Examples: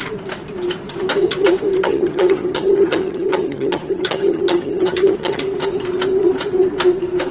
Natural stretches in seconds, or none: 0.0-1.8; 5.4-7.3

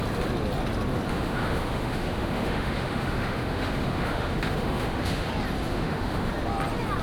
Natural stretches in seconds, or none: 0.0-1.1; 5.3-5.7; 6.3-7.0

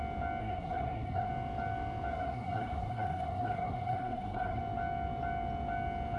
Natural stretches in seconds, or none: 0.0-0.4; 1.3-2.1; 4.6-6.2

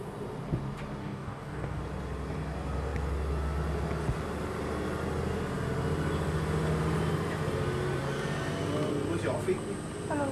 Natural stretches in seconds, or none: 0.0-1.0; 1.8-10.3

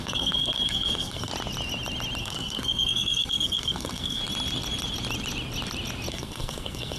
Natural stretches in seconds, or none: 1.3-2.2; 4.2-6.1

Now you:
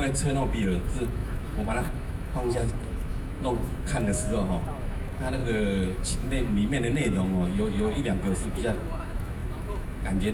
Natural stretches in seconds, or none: none

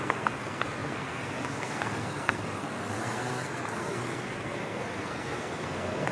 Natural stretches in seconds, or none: none

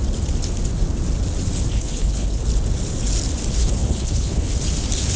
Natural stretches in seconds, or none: 0.0-1.7; 2.4-3.6; 4.5-5.2